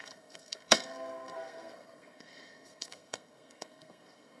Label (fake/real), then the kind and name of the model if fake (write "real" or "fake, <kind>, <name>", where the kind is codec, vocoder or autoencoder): fake, codec, SNAC